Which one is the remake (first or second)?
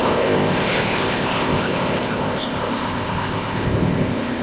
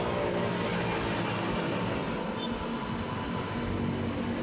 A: first